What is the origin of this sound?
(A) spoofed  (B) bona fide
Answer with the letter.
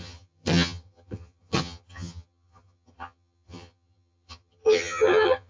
A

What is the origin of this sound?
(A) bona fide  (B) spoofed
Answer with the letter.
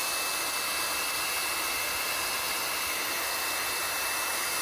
A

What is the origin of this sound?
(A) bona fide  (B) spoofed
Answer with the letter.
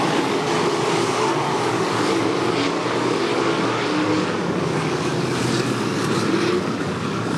B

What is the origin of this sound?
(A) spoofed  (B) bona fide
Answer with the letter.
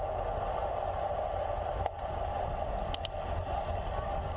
B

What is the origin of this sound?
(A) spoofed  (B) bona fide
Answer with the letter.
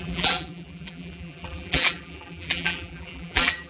A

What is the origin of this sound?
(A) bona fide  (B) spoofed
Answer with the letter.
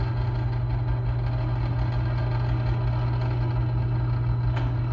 A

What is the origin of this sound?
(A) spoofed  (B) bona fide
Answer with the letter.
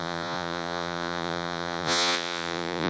A